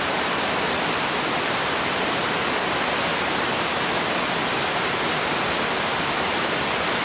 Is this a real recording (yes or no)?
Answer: yes